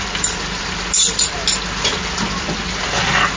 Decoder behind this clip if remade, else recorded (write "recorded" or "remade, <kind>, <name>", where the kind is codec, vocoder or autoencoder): recorded